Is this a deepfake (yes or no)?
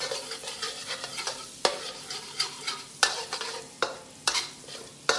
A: no